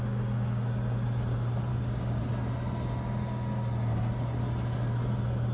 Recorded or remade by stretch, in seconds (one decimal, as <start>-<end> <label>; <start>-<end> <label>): 0.0-1.7 recorded; 1.7-2.2 remade; 2.2-5.5 recorded